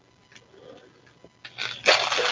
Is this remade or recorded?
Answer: recorded